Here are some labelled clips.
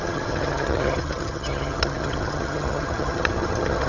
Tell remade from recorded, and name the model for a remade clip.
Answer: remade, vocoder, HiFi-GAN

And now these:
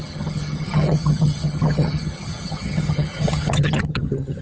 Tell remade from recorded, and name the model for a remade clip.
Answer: remade, vocoder, HiFi-GAN